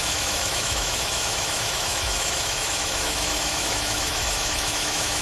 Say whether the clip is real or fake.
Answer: fake